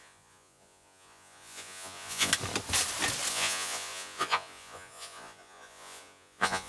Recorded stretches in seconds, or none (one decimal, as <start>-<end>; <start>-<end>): 2.3-3.3